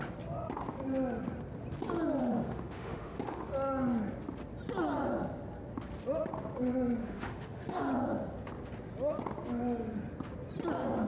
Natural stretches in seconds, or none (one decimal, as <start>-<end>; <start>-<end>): 0.0-2.2; 3.5-7.0; 7.8-11.1